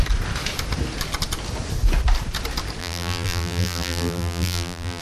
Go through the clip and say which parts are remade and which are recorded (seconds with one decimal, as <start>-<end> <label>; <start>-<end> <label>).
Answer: 0.0-2.8 recorded; 2.8-5.0 remade